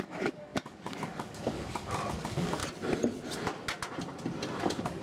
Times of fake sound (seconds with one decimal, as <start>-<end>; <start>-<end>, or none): 0.0-2.6; 4.6-5.0